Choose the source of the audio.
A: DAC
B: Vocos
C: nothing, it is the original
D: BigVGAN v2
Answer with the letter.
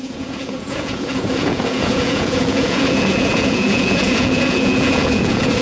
B